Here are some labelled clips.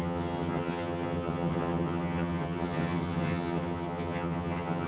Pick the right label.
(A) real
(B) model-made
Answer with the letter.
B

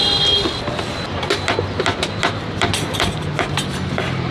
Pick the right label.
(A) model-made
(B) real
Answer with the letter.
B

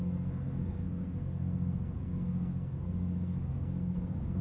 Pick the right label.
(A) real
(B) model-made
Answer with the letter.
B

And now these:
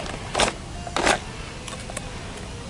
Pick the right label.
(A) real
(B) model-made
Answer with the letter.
A